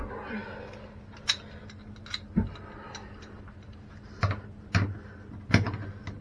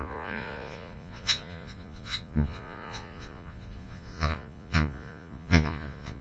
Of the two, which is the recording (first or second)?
first